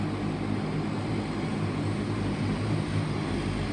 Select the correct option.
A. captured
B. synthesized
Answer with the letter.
A